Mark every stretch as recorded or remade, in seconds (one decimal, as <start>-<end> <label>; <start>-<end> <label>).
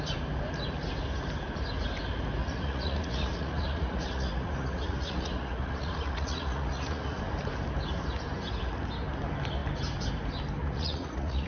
0.0-2.4 recorded; 2.4-7.2 remade; 7.2-10.6 recorded; 10.6-11.5 remade